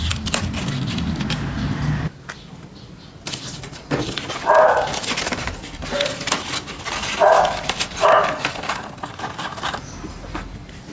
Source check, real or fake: real